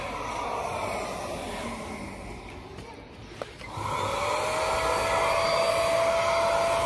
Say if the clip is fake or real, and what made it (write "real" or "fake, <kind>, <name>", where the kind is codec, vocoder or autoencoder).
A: real